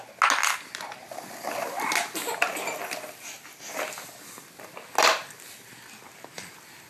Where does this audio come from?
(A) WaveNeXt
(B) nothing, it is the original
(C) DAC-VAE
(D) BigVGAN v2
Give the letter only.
B